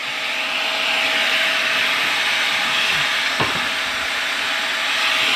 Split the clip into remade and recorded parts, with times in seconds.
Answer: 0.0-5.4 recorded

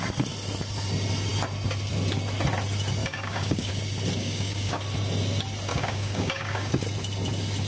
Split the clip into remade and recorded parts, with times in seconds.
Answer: 0.0-3.0 recorded; 3.0-3.7 remade; 3.7-4.2 recorded; 4.2-4.8 remade; 4.8-5.7 recorded; 5.7-6.7 remade; 6.7-7.7 recorded

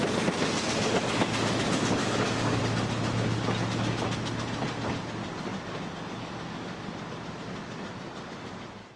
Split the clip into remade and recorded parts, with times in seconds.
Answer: 0.0-2.0 recorded; 2.0-2.6 remade; 2.6-9.0 recorded

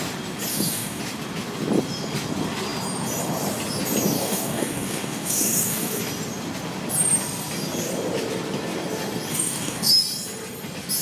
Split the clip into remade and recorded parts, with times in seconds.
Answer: 0.0-0.5 recorded; 0.5-1.0 remade; 1.0-4.2 recorded; 4.2-6.0 remade; 6.0-9.3 recorded; 9.3-9.9 remade; 9.9-11.0 recorded

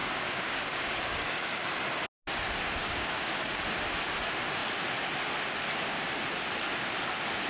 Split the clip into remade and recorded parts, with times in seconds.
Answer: 0.0-1.7 remade; 1.7-2.8 recorded; 2.8-3.6 remade; 3.6-7.5 recorded